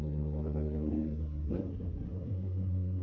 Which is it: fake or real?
fake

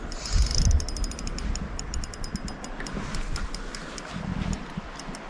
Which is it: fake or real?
real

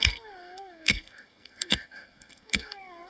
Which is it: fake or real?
fake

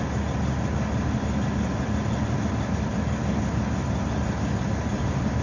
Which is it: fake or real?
real